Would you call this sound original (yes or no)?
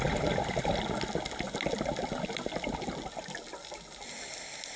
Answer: yes